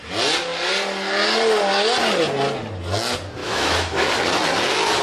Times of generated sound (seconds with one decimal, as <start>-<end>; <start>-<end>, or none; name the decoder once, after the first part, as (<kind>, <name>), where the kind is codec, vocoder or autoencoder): 3.4-4.1 (autoencoder, DAC-VAE)